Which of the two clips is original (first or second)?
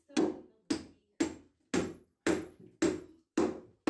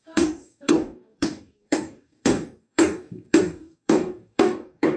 first